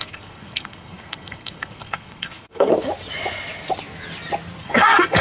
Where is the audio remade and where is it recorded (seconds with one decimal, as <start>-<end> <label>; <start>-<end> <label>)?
0.0-2.7 remade; 2.7-4.6 recorded; 4.6-5.2 remade